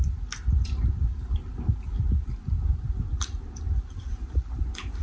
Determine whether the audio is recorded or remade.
recorded